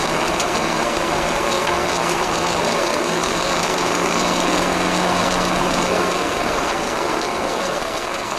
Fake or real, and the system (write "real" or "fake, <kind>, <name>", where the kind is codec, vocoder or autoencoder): fake, codec, SNAC